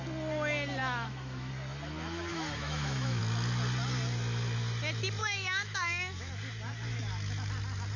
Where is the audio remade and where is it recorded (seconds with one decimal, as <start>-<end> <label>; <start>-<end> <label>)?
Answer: 0.0-0.8 recorded; 0.8-1.5 remade; 1.5-2.3 recorded; 2.3-3.2 remade; 3.2-5.2 recorded; 5.2-6.3 remade; 6.3-8.0 recorded